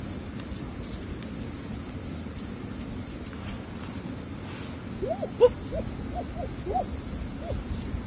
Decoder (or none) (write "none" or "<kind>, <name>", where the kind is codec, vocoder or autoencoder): none